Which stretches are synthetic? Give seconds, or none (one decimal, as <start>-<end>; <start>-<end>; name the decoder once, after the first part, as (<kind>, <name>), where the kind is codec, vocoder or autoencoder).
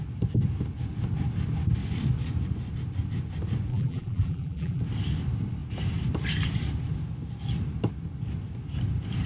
3.7-4.8 (vocoder, BigVGAN v2)